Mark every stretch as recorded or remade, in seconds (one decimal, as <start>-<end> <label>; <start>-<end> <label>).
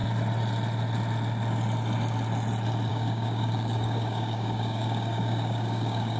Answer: 0.0-2.9 recorded; 2.9-6.2 remade